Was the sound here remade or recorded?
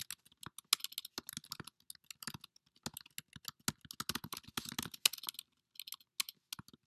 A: recorded